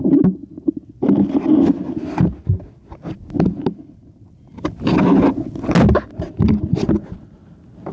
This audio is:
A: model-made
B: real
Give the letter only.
B